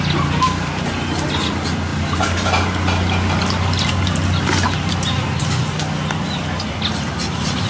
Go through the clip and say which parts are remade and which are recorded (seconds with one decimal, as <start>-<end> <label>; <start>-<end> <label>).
0.0-7.7 recorded